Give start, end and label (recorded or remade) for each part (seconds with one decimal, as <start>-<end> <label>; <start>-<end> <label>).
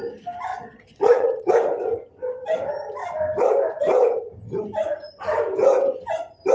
0.0-0.5 recorded; 0.5-1.5 remade; 1.5-6.5 recorded